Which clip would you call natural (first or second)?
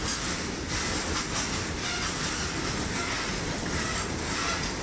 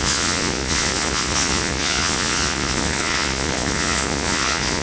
first